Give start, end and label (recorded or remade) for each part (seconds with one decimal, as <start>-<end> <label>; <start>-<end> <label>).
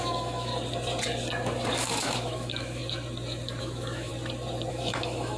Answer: 0.0-0.5 remade; 0.5-1.8 recorded; 1.8-2.8 remade; 2.8-3.6 recorded; 3.6-4.1 remade; 4.1-4.7 recorded; 4.7-5.4 remade